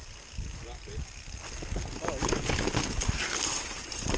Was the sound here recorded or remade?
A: recorded